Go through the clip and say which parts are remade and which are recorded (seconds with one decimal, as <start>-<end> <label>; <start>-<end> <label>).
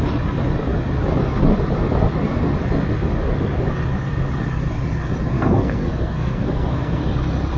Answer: 0.0-5.3 recorded; 5.3-7.0 remade; 7.0-7.6 recorded